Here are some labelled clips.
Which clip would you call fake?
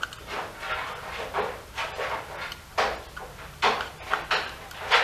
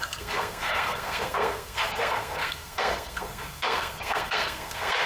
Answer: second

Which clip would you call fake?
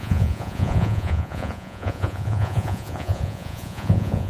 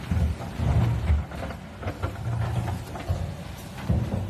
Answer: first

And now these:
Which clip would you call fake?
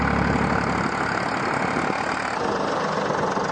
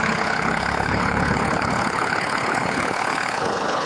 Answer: second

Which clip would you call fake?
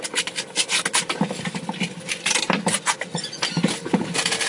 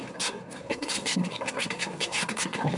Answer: second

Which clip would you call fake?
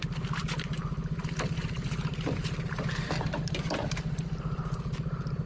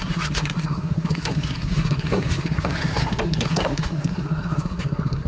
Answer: second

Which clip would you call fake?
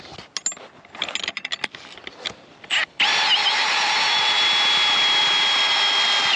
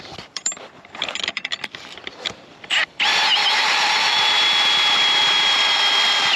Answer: second